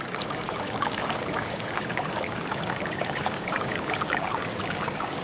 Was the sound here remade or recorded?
remade